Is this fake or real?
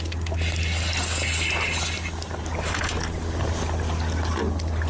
real